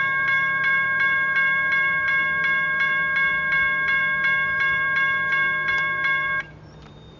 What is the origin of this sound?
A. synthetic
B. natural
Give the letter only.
A